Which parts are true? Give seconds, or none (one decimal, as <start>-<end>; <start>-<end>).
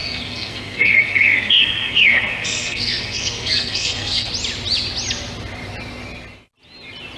4.3-7.2